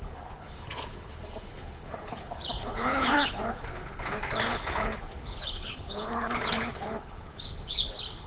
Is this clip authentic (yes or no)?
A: no